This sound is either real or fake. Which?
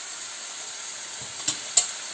real